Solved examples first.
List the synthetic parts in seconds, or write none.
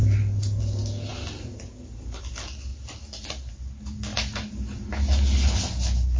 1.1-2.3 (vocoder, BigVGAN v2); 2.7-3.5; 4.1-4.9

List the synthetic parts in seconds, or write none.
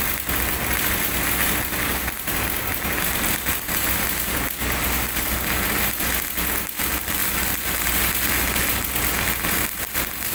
7.2-8.3 (vocoder, BigVGAN v2)